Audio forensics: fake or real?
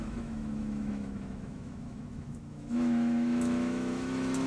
fake